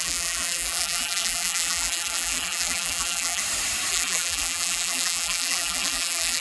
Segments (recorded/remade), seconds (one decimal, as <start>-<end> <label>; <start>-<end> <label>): 0.0-3.4 remade; 3.4-3.9 recorded; 3.9-6.4 remade